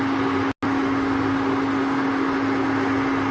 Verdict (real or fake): real